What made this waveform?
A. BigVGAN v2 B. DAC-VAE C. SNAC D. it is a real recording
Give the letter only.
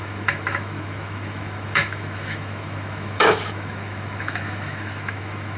B